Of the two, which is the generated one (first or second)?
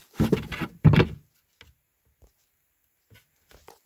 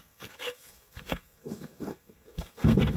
second